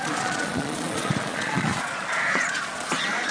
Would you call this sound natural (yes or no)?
no